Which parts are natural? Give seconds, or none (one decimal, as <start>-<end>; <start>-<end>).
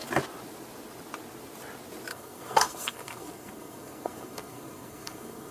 0.0-2.1